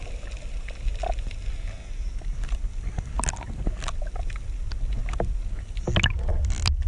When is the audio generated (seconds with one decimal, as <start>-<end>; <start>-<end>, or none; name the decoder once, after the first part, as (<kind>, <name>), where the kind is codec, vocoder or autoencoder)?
none

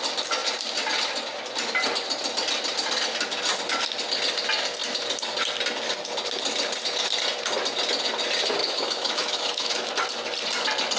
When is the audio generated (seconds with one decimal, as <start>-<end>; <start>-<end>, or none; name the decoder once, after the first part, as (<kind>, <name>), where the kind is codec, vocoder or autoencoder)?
8.6-9.9 (autoencoder, DAC-VAE)

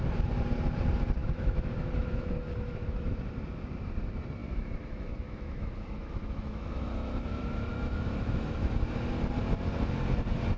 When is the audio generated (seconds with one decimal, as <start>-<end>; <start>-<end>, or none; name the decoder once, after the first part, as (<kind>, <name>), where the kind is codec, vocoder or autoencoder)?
1.2-3.2 (autoencoder, DAC-VAE); 4.4-9.1

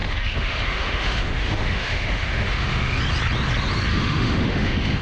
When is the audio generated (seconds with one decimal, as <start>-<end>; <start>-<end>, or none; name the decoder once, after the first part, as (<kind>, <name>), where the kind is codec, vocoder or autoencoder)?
0.0-3.0 (autoencoder, DAC-VAE); 3.9-5.0

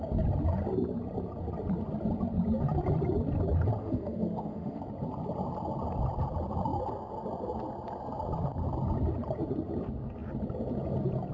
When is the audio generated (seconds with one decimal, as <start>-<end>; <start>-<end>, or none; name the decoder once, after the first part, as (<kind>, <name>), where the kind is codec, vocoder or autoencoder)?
3.8-4.8 (autoencoder, DAC-VAE)

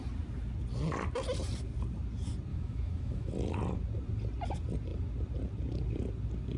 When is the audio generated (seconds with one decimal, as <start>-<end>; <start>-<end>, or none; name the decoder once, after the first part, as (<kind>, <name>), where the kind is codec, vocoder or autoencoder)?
2.5-3.3 (autoencoder, DAC-VAE)

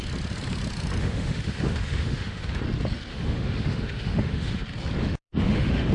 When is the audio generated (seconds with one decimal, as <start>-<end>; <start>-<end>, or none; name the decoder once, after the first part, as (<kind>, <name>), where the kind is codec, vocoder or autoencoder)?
1.0-2.6 (autoencoder, DAC-VAE); 3.1-4.6; 5.0-5.9